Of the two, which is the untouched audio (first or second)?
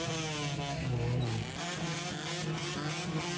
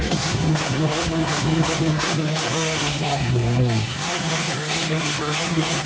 first